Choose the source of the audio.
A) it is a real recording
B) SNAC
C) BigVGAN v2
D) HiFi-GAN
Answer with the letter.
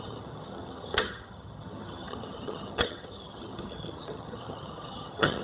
D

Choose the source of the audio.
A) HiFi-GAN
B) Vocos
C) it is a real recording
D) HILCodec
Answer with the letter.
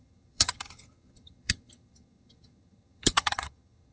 A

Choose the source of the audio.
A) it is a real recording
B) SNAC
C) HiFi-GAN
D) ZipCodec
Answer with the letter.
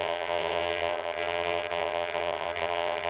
C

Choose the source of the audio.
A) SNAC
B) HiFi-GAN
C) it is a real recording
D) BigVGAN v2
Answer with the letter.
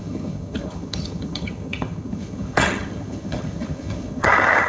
B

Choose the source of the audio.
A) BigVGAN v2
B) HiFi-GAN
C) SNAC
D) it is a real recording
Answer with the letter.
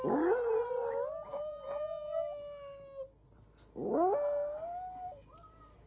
D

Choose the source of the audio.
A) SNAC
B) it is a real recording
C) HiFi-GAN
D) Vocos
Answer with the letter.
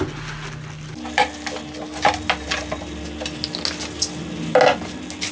B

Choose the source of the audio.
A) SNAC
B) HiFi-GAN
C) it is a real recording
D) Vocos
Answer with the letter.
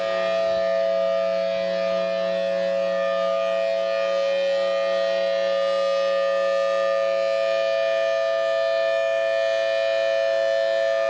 C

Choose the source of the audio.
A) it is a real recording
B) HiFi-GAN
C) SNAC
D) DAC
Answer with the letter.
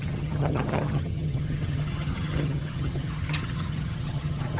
B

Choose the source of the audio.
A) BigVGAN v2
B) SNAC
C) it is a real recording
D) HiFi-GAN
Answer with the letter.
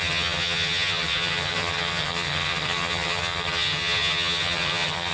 D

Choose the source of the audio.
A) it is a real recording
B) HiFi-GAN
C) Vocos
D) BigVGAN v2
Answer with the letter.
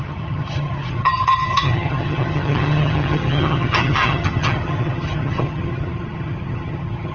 B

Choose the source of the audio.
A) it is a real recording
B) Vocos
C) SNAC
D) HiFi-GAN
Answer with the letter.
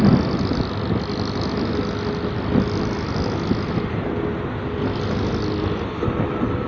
A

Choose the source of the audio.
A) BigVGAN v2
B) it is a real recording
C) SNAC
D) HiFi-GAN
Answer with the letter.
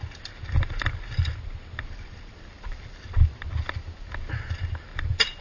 B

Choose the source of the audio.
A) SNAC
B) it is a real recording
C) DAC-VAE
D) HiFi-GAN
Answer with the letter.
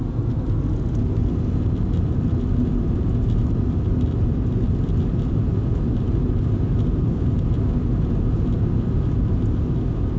B